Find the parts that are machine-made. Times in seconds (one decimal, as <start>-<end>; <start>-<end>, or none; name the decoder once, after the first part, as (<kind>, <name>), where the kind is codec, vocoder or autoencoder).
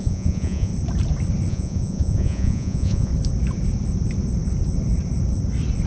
0.0-0.7 (vocoder, Vocos); 1.5-3.1